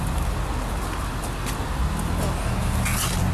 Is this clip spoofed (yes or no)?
no